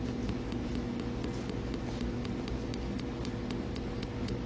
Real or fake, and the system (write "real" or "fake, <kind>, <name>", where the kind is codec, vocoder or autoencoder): real